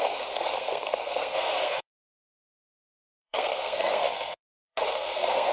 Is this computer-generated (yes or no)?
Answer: yes